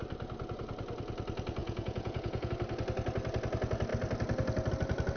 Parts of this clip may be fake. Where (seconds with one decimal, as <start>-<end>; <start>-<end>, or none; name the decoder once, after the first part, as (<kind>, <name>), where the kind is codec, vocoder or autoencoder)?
1.6-2.5 (vocoder, Vocos)